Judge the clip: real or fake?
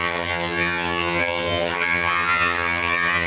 fake